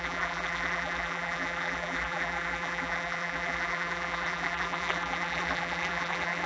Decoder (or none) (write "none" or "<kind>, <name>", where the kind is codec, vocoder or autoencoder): vocoder, BigVGAN v2